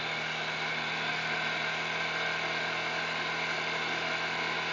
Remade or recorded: recorded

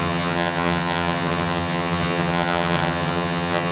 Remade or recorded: remade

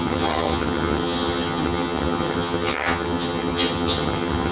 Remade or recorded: remade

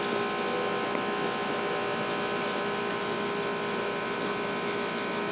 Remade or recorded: recorded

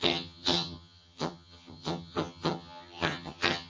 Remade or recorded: remade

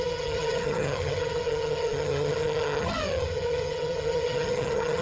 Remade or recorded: remade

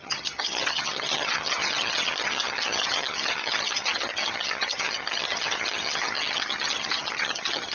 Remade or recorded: remade